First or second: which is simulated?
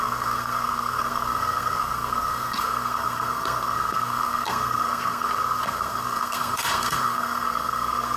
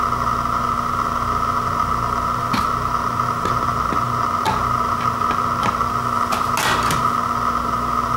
first